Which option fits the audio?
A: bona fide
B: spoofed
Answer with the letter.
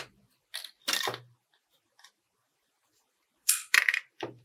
B